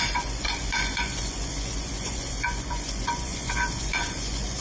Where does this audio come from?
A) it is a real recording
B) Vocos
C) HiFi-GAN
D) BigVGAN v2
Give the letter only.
B